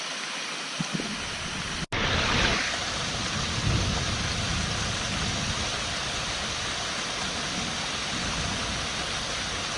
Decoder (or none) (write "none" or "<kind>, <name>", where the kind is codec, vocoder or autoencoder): none